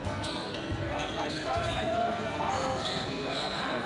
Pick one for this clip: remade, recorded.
remade